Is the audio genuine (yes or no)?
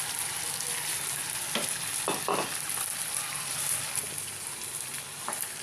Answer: yes